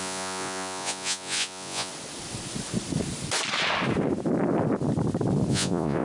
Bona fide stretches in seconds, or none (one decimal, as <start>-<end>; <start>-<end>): 1.9-5.5